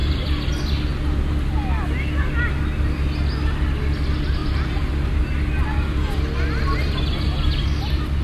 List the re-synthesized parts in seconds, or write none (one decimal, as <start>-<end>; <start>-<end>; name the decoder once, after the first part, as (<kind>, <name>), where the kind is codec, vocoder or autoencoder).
0.0-0.5 (vocoder, BigVGAN v2); 4.4-5.2